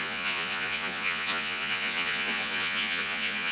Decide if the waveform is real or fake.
fake